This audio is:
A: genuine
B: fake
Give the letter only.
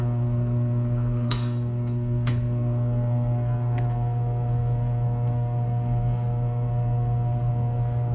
B